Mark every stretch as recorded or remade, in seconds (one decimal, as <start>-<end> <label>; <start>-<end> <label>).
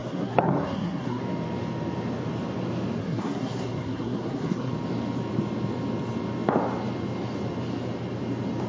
0.0-1.2 remade; 1.2-3.0 recorded; 3.0-4.7 remade; 4.7-8.7 recorded